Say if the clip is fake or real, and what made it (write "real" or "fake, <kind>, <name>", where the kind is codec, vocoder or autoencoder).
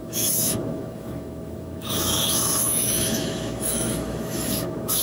fake, autoencoder, DAC-VAE